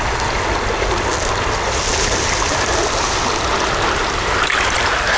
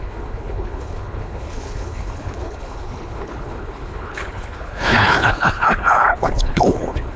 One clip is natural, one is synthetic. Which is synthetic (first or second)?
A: second